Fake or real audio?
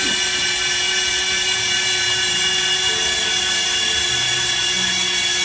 real